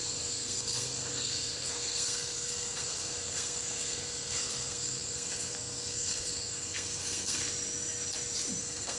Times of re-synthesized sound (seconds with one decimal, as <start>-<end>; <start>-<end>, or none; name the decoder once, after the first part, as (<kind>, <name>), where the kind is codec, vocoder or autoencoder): 0.0-7.4 (codec, SNAC); 8.6-9.0